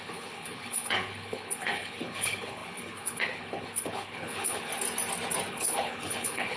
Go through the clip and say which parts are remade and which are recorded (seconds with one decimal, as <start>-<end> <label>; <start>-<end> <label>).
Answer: 0.0-4.7 remade; 4.7-5.5 recorded; 5.5-6.6 remade